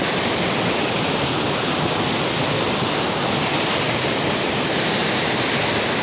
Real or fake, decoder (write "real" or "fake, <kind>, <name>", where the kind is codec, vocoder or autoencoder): real